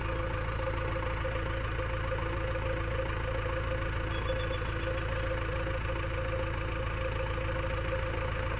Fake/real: real